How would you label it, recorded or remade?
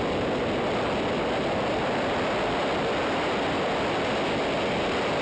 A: recorded